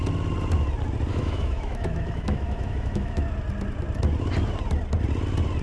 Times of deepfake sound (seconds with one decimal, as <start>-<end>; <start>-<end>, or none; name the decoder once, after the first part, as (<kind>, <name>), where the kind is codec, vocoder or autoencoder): 1.1-3.2 (autoencoder, DAC-VAE)